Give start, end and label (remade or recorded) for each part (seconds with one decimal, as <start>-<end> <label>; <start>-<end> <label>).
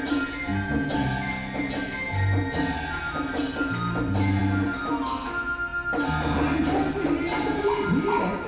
0.0-8.5 recorded